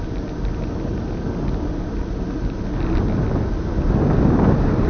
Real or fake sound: real